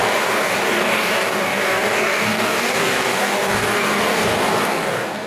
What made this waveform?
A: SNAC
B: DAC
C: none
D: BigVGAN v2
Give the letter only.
B